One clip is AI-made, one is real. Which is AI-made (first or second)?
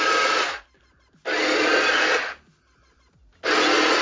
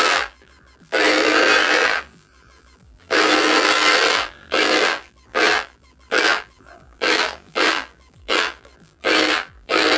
second